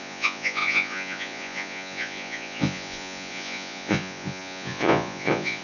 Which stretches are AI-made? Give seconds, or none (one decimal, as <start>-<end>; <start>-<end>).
0.0-5.6